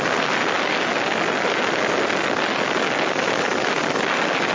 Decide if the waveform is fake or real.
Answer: real